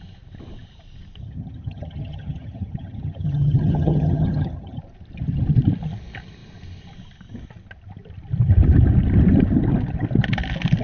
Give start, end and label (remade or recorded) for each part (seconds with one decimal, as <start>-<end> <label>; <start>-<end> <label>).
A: 0.0-1.2 recorded; 1.2-4.8 remade; 4.8-10.8 recorded